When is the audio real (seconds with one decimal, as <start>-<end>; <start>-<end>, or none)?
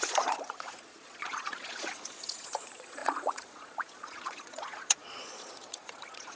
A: none